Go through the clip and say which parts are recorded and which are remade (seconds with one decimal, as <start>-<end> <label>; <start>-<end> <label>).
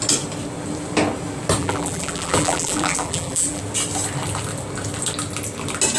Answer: 0.0-1.6 recorded; 1.6-3.6 remade; 3.6-6.0 recorded